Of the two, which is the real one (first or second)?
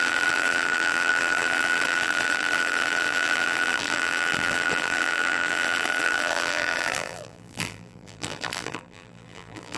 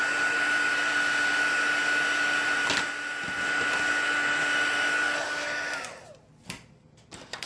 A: second